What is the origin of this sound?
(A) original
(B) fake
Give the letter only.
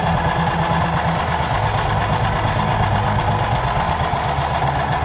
A